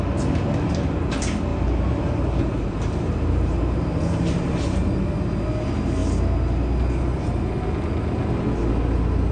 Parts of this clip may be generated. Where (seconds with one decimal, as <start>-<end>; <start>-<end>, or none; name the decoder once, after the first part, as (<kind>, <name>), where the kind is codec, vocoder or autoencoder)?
1.5-4.3 (vocoder, BigVGAN v2)